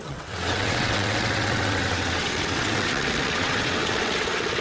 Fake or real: fake